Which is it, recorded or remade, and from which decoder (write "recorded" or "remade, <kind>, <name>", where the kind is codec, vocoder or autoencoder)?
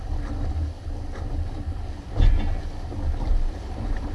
recorded